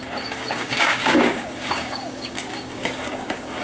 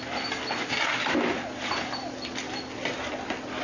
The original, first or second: second